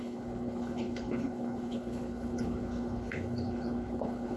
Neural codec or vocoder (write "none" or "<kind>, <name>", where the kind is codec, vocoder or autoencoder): codec, HILCodec